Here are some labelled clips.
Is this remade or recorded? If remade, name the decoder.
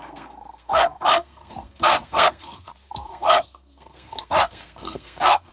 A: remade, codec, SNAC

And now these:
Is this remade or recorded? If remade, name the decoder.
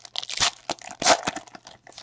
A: recorded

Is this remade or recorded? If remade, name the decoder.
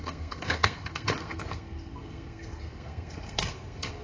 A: remade, codec, SNAC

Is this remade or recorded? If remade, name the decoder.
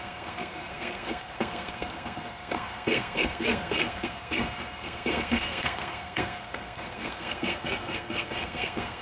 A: remade, codec, SNAC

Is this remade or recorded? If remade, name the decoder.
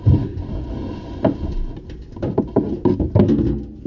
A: recorded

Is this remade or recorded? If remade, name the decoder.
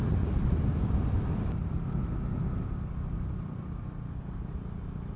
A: recorded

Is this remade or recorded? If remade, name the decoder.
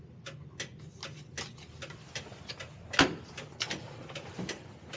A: recorded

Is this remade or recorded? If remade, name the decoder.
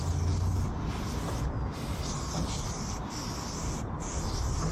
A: recorded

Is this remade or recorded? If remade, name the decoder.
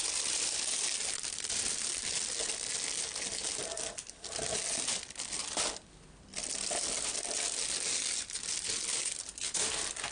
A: recorded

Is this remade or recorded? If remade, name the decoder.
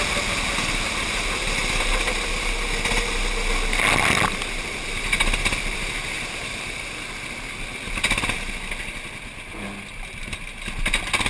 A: recorded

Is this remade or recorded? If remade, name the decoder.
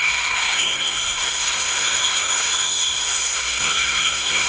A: remade, codec, SNAC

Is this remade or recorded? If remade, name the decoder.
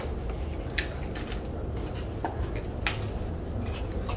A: recorded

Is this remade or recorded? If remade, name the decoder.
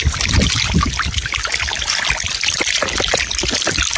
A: recorded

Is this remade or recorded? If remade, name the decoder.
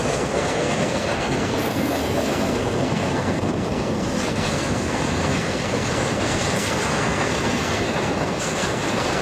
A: remade, codec, SNAC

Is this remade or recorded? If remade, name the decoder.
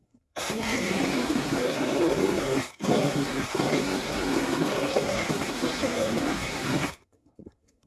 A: remade, codec, SNAC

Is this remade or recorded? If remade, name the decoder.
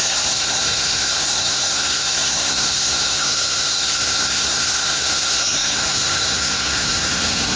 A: remade, codec, SNAC